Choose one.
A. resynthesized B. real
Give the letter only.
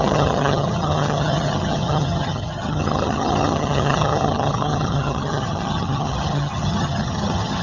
A